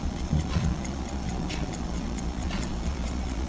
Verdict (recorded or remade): remade